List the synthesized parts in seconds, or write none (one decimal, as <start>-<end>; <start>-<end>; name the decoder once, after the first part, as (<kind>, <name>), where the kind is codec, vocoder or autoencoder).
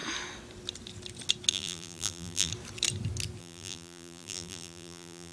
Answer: 1.5-2.5 (vocoder, BigVGAN v2); 3.4-5.3